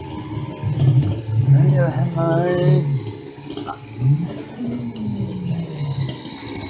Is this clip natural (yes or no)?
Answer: yes